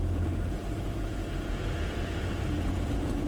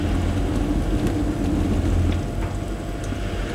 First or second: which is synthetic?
first